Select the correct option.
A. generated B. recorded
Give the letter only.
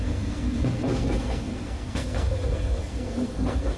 A